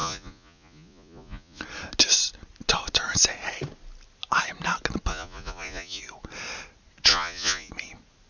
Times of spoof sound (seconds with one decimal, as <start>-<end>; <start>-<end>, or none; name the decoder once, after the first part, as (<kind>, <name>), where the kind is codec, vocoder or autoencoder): 0.0-1.6 (vocoder, Vocos); 5.1-6.0; 7.1-7.7